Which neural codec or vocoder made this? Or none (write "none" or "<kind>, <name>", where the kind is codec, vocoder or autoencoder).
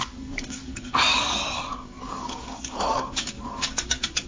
codec, DAC